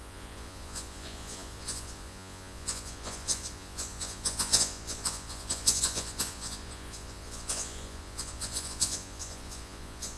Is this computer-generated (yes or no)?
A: yes